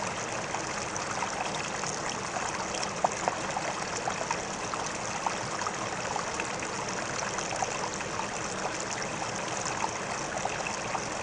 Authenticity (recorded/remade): recorded